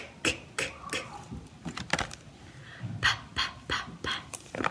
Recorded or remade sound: recorded